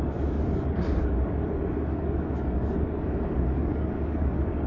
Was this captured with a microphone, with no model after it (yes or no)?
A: no